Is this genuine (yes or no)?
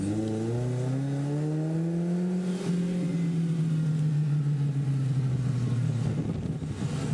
yes